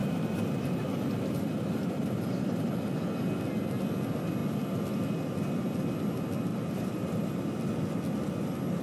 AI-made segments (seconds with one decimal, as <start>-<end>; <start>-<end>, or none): 0.0-2.7; 6.5-7.4